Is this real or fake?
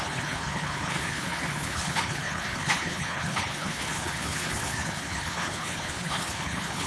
fake